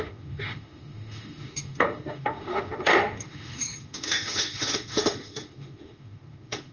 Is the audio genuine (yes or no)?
no